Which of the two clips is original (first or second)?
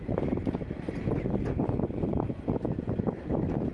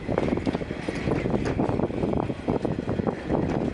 second